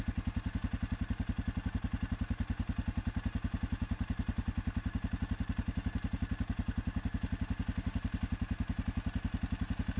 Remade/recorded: recorded